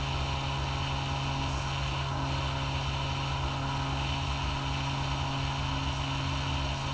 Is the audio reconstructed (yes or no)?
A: no